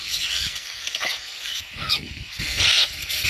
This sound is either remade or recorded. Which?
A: remade